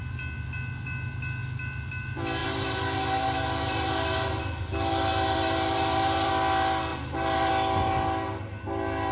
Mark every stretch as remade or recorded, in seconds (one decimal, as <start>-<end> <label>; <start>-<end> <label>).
0.0-2.4 recorded; 2.4-6.3 remade; 6.3-6.9 recorded; 6.9-7.5 remade; 7.5-9.1 recorded

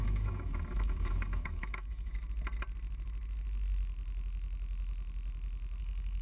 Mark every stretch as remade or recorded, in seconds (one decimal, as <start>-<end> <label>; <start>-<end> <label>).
0.0-2.1 remade; 2.1-5.8 recorded; 5.8-6.2 remade

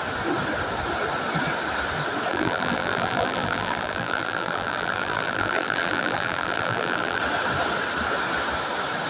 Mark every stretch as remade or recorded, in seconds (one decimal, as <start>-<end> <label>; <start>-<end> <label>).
0.0-2.3 recorded; 2.3-7.2 remade; 7.2-9.1 recorded

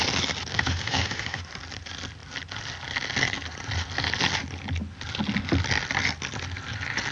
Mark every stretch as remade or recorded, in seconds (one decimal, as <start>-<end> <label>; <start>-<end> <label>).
0.0-0.5 recorded; 0.5-1.4 remade; 1.4-7.1 recorded

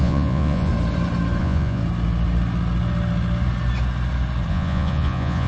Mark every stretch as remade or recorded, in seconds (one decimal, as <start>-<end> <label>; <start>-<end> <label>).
0.0-0.7 remade; 0.7-1.4 recorded; 1.4-1.8 remade; 1.8-4.5 recorded; 4.5-5.5 remade